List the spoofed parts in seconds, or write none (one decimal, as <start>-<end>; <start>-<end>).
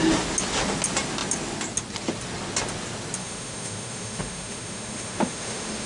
3.2-5.9